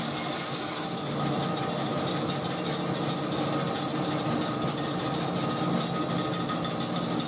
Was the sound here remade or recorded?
recorded